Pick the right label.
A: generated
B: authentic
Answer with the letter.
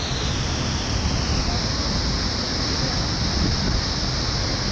B